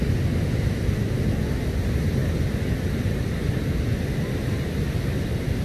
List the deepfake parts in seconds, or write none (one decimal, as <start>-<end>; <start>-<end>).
none